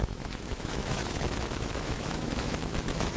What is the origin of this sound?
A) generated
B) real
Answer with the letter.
A